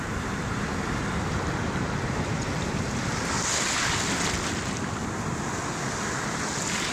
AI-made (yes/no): no